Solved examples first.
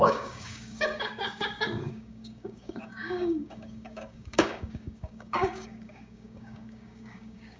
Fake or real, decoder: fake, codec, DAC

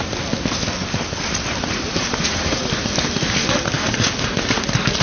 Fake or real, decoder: real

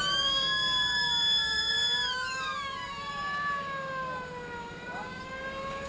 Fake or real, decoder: fake, codec, DAC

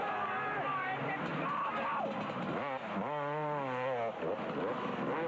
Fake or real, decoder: real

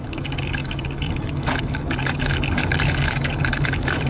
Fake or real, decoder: fake, codec, DAC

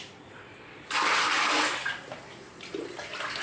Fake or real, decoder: real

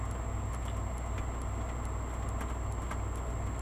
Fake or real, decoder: real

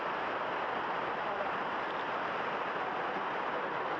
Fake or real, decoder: real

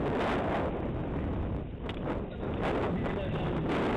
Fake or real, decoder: real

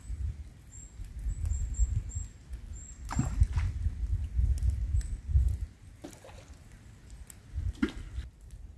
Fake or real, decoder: real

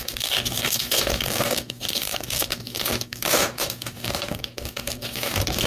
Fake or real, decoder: fake, codec, DAC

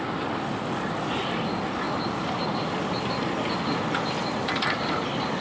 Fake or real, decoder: real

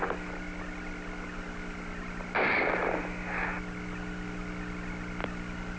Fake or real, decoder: real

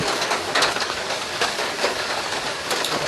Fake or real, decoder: fake, codec, DAC